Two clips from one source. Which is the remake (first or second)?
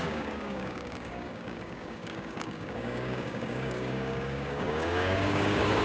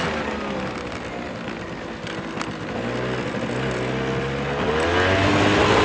first